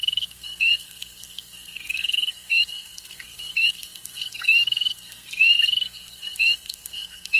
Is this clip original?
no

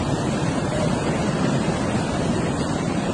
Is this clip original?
no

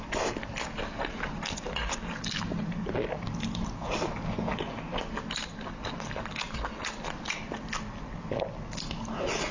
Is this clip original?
yes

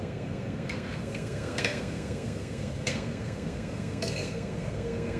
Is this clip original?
no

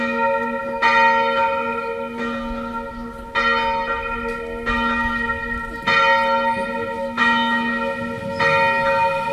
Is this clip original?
yes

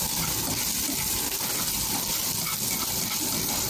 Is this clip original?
yes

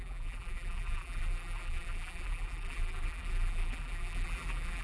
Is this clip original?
no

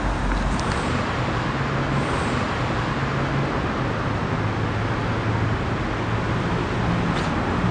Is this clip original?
yes